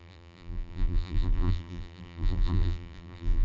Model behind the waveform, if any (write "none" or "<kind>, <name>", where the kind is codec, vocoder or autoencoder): vocoder, BigVGAN v2